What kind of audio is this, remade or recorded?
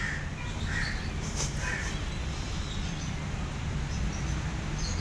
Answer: recorded